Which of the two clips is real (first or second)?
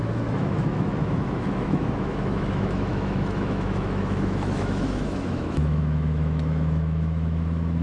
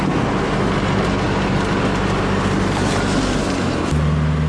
second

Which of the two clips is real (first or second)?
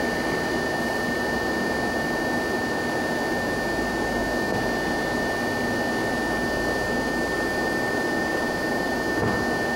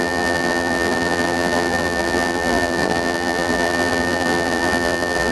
first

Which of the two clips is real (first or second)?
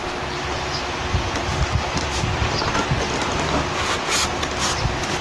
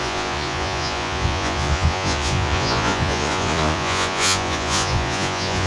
first